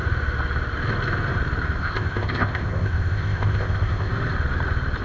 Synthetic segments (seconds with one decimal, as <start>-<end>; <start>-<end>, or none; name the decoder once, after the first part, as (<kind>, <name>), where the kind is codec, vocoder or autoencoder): 1.8-4.1 (codec, ZipCodec)